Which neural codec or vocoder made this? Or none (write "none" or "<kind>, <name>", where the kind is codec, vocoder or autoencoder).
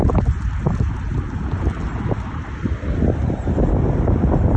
none